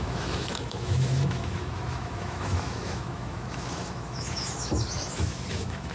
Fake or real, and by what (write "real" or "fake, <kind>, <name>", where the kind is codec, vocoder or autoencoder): fake, autoencoder, DAC-VAE